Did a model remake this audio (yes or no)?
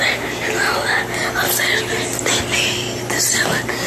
no